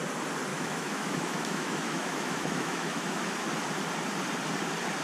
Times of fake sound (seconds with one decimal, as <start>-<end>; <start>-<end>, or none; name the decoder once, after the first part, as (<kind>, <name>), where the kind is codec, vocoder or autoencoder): 0.5-3.5 (autoencoder, DAC-VAE)